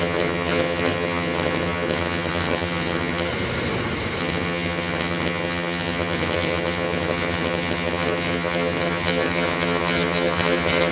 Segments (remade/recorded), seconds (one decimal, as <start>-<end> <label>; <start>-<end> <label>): 0.0-3.3 remade; 3.3-4.2 recorded; 4.2-10.9 remade